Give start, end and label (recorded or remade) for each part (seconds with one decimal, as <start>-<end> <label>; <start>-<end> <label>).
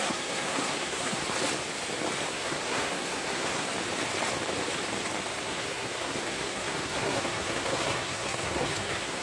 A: 0.0-1.2 remade; 1.2-2.3 recorded; 2.3-3.7 remade; 3.7-5.3 recorded; 5.3-9.2 remade